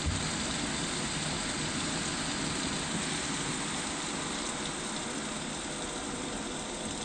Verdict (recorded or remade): recorded